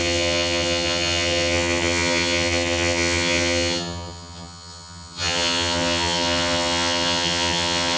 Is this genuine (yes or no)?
no